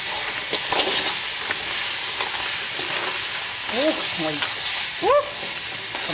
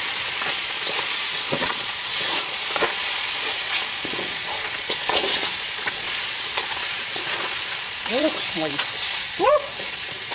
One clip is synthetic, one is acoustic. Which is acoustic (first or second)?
first